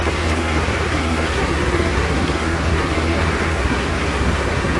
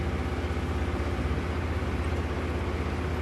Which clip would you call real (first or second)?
second